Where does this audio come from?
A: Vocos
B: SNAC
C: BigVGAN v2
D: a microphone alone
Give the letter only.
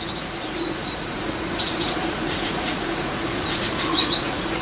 A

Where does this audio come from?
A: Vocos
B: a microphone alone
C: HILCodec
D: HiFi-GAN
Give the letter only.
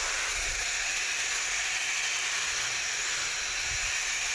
B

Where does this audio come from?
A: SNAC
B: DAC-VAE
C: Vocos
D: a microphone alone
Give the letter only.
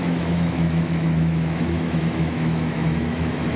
B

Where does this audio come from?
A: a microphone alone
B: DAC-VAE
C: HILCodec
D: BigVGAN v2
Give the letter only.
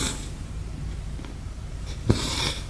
D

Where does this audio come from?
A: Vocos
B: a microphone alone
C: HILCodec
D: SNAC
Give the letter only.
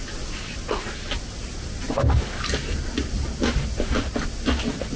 B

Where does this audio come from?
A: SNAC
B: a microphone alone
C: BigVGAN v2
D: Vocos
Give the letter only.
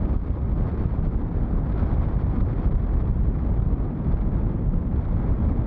B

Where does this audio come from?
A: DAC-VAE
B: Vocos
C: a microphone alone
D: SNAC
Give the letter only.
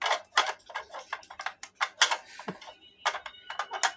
C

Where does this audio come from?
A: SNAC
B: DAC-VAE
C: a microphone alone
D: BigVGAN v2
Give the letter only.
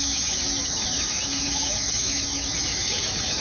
B